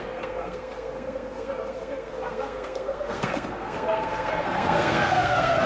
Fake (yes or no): yes